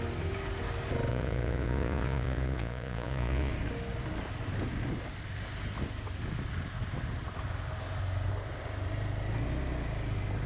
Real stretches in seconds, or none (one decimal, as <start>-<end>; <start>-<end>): 0.0-1.1; 3.5-10.5